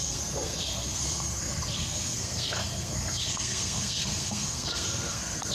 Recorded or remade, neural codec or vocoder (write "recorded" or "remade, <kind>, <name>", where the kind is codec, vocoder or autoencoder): remade, codec, SNAC